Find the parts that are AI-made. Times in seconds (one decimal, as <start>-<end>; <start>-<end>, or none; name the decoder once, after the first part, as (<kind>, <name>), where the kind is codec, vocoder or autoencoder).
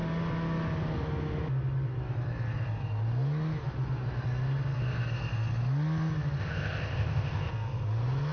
6.4-7.5 (codec, ZipCodec)